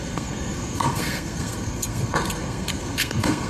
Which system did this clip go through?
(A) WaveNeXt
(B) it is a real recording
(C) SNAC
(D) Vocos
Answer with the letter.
C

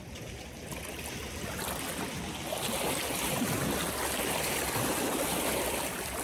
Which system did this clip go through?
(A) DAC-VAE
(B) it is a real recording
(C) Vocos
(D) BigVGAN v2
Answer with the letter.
B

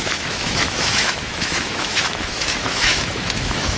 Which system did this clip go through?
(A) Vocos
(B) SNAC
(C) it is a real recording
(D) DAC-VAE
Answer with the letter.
D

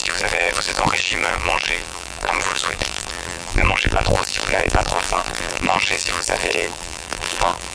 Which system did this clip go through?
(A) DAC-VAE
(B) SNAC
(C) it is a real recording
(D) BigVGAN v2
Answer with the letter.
D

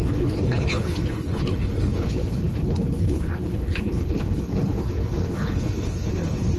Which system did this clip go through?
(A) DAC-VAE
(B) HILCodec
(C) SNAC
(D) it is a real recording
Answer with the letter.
B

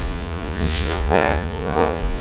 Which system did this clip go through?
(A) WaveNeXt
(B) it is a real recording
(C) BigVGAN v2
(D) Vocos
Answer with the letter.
D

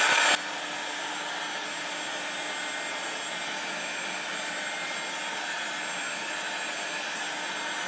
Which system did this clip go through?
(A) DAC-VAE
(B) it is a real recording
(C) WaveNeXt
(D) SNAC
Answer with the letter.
B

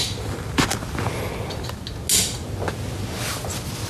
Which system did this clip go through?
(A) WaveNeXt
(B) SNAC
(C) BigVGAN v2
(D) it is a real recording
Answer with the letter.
D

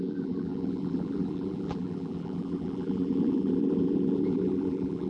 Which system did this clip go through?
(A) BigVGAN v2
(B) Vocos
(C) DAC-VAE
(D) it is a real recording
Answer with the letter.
A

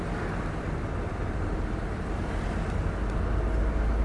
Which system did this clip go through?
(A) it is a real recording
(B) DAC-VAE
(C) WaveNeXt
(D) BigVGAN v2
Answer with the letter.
A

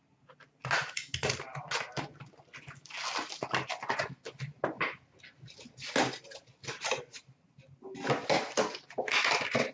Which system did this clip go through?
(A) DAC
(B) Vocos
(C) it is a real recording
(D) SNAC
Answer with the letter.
C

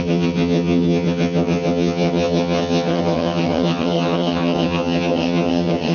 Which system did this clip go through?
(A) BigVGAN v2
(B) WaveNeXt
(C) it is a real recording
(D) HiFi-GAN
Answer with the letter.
D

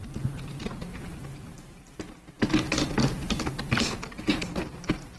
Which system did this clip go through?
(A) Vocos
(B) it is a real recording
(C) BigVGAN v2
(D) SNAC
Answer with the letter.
B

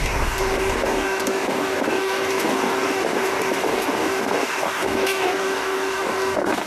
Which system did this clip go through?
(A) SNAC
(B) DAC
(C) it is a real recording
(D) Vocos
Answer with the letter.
B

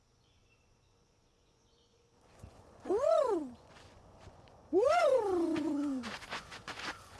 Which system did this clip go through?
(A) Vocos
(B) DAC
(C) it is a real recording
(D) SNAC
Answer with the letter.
A